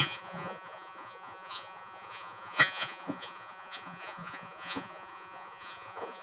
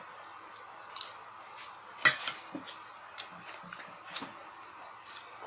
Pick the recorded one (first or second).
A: second